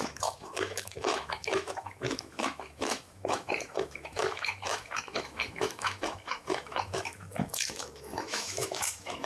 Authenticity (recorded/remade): remade